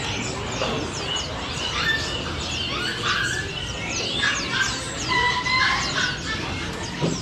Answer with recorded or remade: recorded